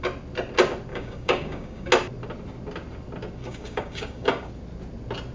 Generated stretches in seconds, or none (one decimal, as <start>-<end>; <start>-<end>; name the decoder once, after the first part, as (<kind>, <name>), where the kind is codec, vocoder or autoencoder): 0.9-1.9 (codec, DAC); 3.4-4.5